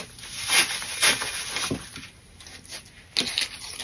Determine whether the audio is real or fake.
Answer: real